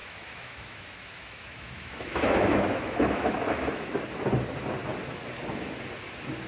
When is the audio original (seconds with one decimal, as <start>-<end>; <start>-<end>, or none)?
3.9-6.5